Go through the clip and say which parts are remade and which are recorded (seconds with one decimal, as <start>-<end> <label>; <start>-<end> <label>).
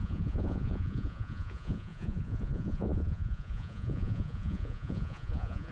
0.0-5.7 remade